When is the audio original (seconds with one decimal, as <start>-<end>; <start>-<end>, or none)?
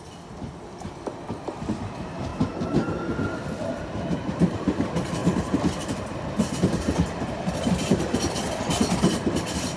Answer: 2.3-4.6; 5.2-6.5